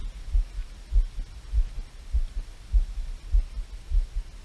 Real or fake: real